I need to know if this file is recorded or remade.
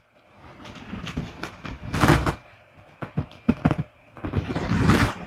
recorded